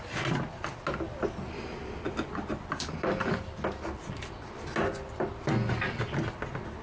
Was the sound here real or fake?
real